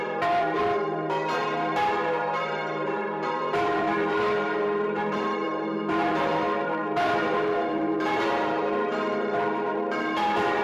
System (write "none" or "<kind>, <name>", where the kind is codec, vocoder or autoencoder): vocoder, BigVGAN v2